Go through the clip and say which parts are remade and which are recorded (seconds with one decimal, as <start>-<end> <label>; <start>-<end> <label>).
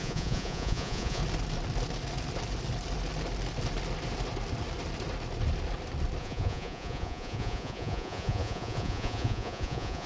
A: 0.0-1.2 remade; 1.2-6.2 recorded; 6.2-10.1 remade